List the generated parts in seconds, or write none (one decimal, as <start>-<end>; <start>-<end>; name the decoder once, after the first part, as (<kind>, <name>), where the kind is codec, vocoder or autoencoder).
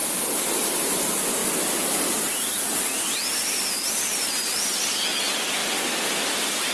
5.6-6.7 (vocoder, BigVGAN v2)